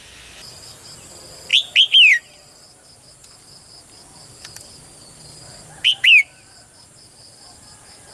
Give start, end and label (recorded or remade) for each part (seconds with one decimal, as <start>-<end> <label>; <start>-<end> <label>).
0.0-8.1 recorded